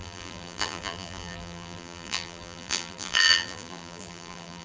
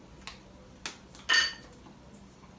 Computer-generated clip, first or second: first